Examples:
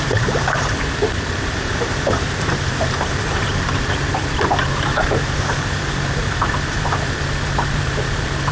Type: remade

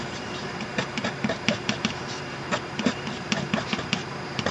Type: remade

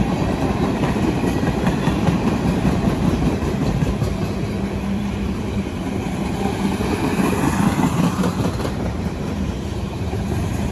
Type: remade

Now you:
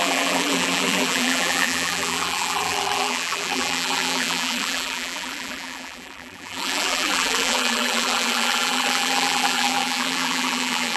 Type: remade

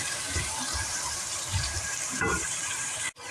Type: remade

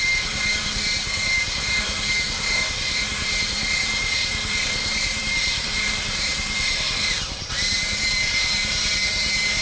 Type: remade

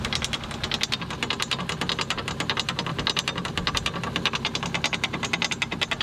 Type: recorded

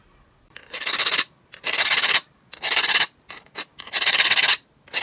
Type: remade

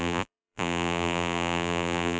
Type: remade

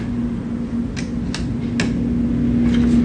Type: recorded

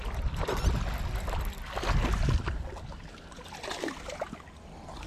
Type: recorded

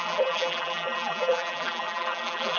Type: remade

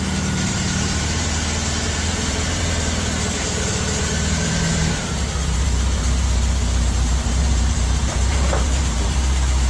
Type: remade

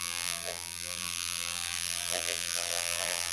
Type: remade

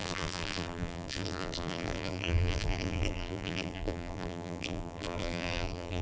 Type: remade